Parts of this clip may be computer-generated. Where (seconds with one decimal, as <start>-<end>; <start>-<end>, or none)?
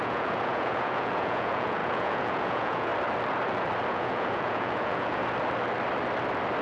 0.0-2.9; 3.9-5.2